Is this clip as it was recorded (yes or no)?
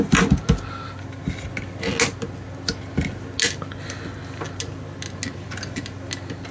yes